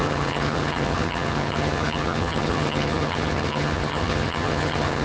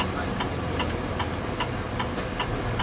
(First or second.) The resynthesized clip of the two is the first